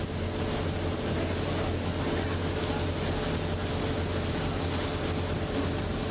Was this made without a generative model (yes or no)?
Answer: yes